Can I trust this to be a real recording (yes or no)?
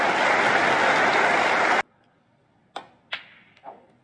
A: yes